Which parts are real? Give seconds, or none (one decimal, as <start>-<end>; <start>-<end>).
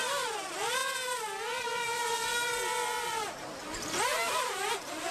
0.8-3.0